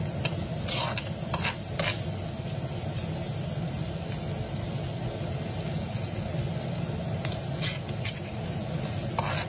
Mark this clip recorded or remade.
recorded